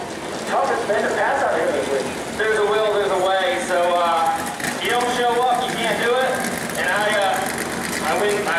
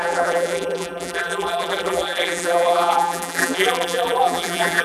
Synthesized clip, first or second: second